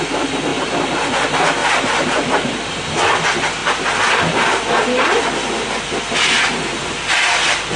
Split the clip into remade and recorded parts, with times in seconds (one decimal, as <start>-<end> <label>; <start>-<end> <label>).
0.0-0.5 recorded; 0.5-1.1 remade; 1.1-1.6 recorded; 1.6-2.7 remade; 2.7-7.8 recorded